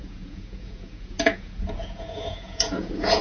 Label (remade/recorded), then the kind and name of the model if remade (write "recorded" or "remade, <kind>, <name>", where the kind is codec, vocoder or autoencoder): remade, vocoder, Vocos